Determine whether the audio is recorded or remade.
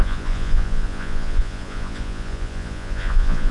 remade